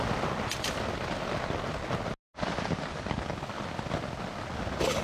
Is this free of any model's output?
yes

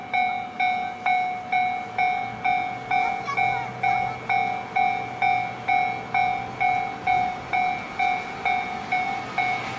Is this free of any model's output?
yes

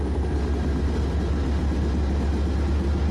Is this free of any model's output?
yes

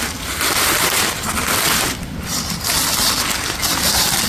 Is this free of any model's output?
yes